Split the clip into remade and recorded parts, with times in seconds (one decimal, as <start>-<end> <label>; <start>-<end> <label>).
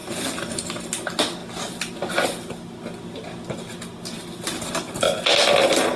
0.0-6.0 recorded